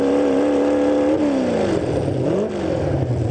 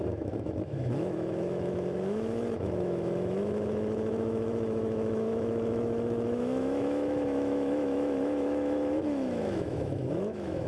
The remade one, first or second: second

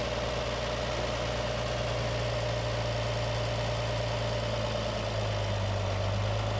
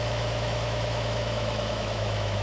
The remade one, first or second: second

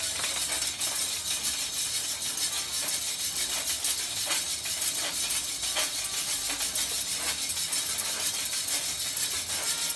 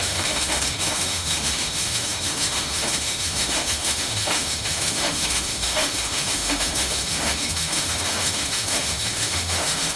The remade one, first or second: second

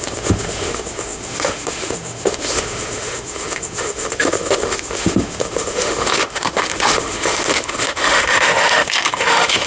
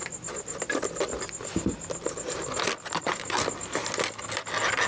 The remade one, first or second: first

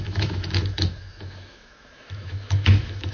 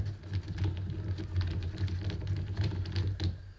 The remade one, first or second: first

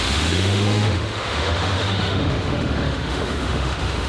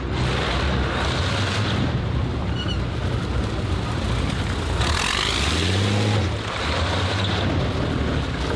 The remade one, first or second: first